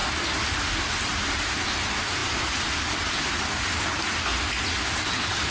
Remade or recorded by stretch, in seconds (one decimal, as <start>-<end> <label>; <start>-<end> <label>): 0.0-5.5 recorded